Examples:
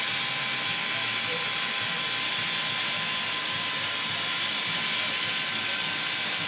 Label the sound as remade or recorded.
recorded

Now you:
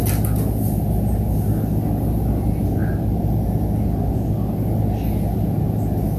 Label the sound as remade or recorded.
recorded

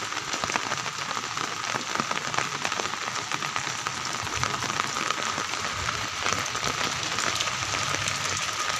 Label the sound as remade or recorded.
remade